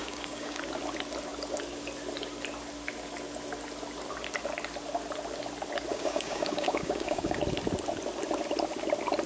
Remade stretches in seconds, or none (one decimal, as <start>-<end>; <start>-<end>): 0.0-0.6; 5.9-7.4